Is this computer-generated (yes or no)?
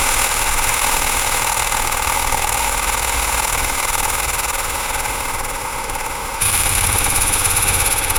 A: yes